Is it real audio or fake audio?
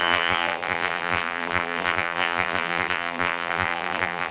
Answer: fake